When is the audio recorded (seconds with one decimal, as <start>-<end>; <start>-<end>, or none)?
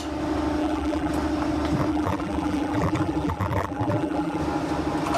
0.0-0.6; 1.1-1.9; 4.4-5.2